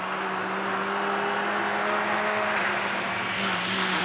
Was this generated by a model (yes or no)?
no